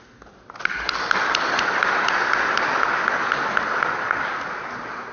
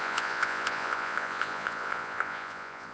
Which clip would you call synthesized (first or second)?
second